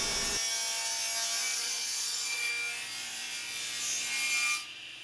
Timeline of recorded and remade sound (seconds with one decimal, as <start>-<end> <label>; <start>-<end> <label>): 0.0-1.5 recorded; 1.5-2.5 remade; 2.5-5.0 recorded